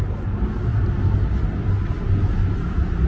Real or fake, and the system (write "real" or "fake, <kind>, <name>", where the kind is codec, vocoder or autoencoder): real